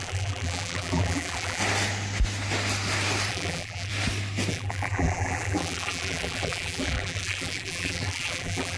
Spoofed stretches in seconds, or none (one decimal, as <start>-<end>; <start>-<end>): 0.0-1.6; 3.3-3.9; 4.5-8.8